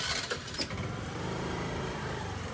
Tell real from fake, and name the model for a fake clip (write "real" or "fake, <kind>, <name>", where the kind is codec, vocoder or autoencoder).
real